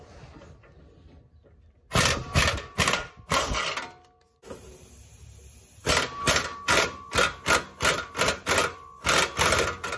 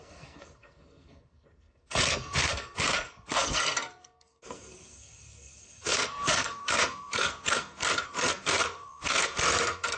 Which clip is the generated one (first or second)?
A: second